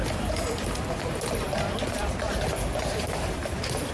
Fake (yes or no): yes